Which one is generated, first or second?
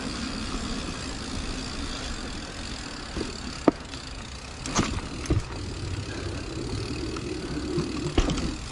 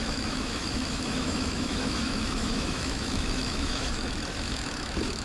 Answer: second